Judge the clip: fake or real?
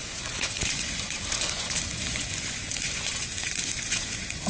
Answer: fake